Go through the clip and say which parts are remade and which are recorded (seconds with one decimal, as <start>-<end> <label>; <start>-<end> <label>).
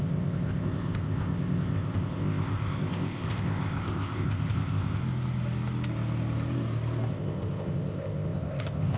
0.0-5.0 remade; 5.0-7.1 recorded; 7.1-9.0 remade